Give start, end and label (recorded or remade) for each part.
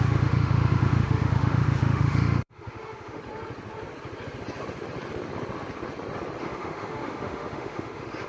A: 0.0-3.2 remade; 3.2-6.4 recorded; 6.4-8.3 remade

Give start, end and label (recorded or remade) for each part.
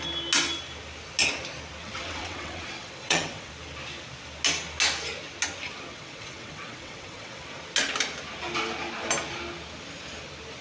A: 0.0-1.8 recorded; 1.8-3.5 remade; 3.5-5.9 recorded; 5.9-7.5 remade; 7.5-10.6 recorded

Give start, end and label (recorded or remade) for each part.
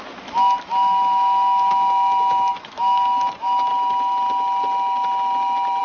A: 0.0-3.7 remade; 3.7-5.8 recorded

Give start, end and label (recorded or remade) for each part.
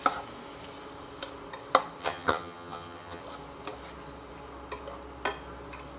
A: 0.0-2.0 recorded; 2.0-3.2 remade; 3.2-6.0 recorded